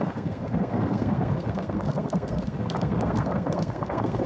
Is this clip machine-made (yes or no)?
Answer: yes